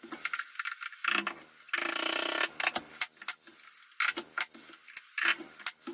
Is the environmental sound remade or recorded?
recorded